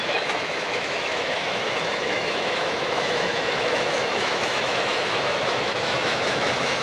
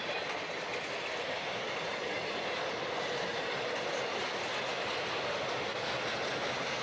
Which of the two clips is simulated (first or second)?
first